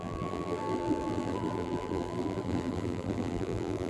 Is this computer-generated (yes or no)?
yes